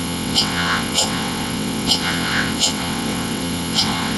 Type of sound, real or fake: fake